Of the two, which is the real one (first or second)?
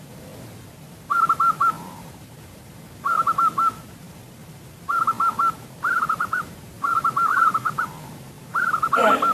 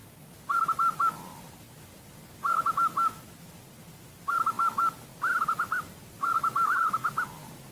second